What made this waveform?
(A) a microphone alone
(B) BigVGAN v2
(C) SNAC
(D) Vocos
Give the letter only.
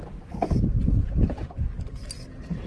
A